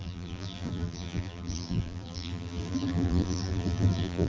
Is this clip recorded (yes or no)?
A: no